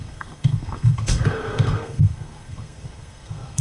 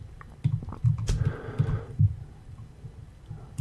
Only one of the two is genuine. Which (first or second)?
second